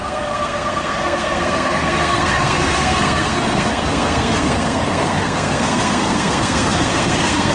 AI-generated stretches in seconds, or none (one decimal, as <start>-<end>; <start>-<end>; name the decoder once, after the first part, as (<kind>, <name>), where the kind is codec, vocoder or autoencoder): 0.0-7.5 (codec, SNAC)